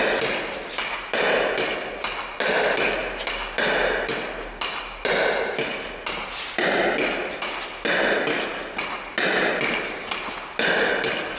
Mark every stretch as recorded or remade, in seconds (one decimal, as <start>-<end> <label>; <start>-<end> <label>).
0.0-11.4 recorded